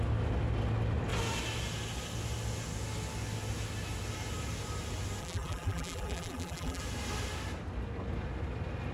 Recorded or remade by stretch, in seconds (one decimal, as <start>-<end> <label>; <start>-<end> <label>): 0.0-5.2 recorded; 5.2-6.8 remade; 6.8-8.9 recorded